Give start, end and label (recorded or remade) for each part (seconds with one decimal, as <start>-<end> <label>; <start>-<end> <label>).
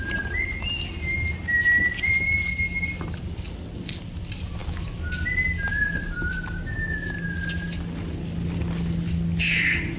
0.0-10.0 recorded